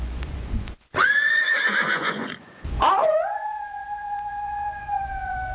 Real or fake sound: fake